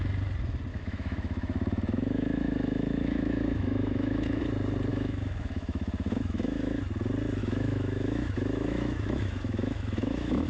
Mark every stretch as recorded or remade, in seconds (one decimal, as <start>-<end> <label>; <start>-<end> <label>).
0.0-0.7 recorded; 0.7-4.4 remade; 4.4-4.9 recorded; 4.9-6.8 remade; 6.8-7.4 recorded; 7.4-10.5 remade